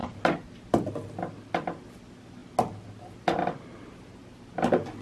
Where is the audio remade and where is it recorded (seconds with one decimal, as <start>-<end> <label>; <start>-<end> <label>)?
0.0-5.0 recorded